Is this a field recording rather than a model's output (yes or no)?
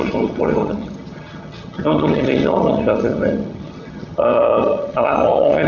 no